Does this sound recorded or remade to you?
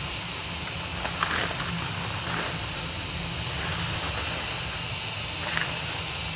recorded